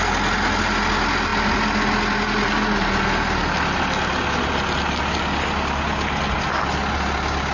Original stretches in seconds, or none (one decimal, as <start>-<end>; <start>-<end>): 0.0-7.5